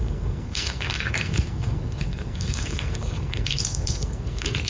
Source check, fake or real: fake